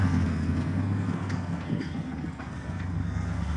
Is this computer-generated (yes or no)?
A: yes